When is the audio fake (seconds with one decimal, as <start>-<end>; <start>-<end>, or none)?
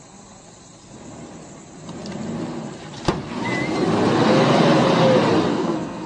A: 5.5-6.1